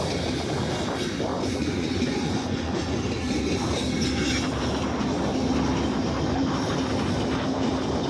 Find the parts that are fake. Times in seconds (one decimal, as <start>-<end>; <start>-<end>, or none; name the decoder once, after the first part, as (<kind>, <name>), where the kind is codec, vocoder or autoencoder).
1.3-3.0 (vocoder, Vocos)